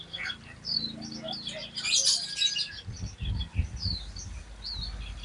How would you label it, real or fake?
real